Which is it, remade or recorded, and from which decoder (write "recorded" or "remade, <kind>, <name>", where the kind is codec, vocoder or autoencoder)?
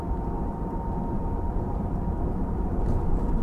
remade, vocoder, BigVGAN v2